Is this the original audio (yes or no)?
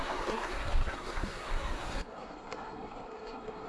no